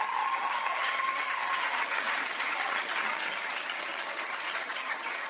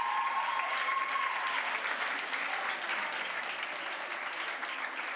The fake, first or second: first